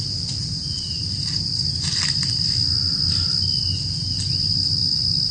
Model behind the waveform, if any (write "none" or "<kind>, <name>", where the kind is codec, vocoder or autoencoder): none